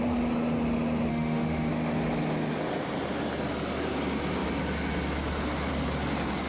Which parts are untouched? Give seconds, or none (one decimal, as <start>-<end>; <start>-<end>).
0.0-1.1; 1.7-6.5